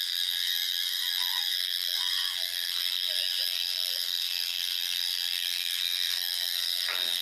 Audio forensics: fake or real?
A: fake